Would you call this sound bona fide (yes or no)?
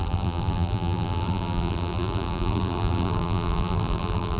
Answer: no